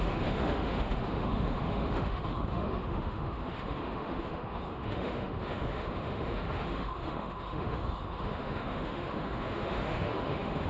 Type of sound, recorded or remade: remade